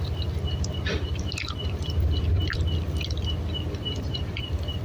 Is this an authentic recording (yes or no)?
no